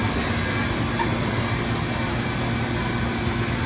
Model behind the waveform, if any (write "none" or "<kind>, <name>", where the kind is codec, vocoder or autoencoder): none